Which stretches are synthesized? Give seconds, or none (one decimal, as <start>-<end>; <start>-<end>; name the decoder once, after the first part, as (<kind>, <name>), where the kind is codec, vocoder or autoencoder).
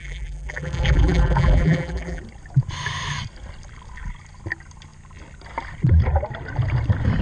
0.0-2.2 (vocoder, BigVGAN v2)